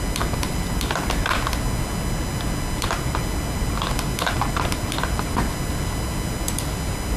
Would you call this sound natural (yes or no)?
yes